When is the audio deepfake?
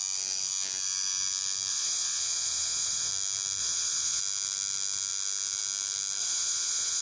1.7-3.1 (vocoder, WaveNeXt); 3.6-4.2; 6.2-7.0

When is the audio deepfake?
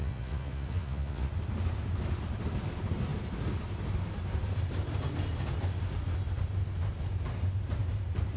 0.0-1.3 (vocoder, Vocos)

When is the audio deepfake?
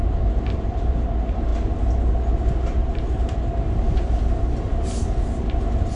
none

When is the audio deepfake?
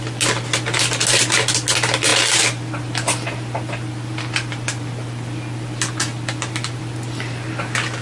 none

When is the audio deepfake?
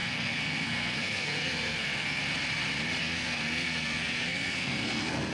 0.0-2.2 (codec, SNAC); 3.0-5.3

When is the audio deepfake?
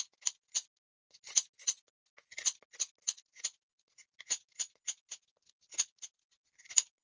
none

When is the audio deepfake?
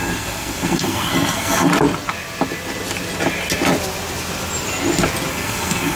0.0-1.7 (codec, SNAC); 5.3-6.0